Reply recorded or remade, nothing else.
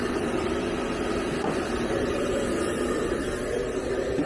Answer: recorded